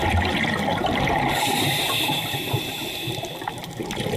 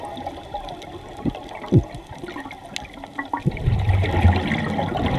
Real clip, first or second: second